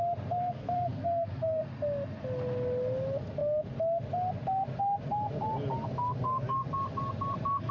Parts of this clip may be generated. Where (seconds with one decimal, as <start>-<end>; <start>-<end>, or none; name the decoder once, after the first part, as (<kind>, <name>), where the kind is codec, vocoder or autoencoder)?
0.4-1.6 (codec, SNAC)